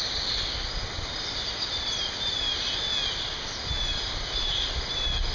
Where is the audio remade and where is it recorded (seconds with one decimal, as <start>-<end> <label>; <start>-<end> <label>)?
0.0-5.3 recorded